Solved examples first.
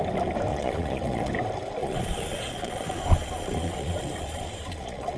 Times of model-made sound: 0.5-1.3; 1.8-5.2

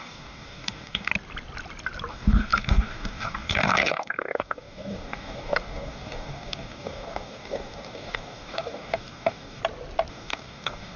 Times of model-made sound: 0.0-1.1; 2.1-9.6; 10.1-11.0